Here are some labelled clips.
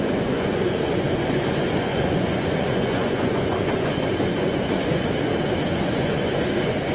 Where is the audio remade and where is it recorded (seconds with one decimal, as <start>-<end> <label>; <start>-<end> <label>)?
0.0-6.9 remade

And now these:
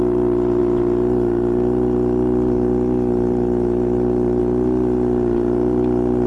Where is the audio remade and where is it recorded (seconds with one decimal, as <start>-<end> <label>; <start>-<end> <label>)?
0.0-6.3 recorded

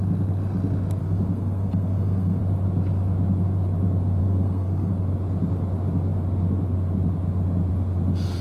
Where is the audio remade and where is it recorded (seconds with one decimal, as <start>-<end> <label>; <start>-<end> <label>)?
0.0-1.0 recorded; 1.0-2.4 remade; 2.4-4.2 recorded; 4.2-4.9 remade; 4.9-8.4 recorded

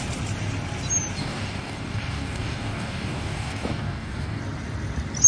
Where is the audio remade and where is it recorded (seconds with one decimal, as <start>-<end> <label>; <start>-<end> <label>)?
0.0-1.2 recorded; 1.2-4.4 remade; 4.4-5.3 recorded

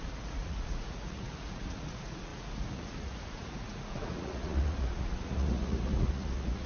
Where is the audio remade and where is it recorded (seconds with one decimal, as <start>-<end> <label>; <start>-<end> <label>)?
0.0-6.7 remade